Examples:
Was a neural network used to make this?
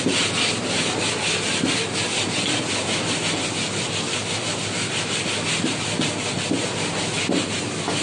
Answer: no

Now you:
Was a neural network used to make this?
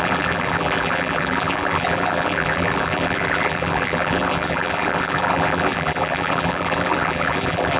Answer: yes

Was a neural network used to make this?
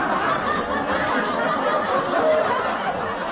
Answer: no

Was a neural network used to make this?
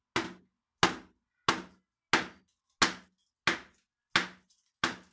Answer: no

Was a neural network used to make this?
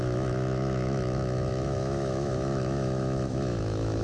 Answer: yes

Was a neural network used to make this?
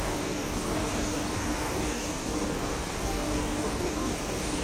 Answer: yes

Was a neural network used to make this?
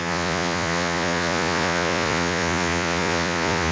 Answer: yes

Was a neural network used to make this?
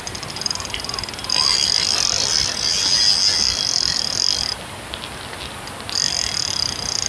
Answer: no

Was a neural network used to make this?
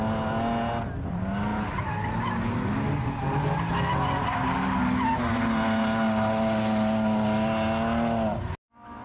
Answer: no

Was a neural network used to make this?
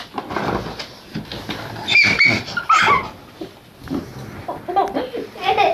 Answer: no